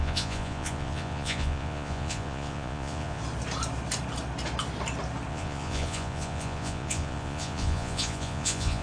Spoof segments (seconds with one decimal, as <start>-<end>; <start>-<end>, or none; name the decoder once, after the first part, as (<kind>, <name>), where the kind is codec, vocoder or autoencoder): 0.0-3.2 (vocoder, Vocos); 5.3-8.8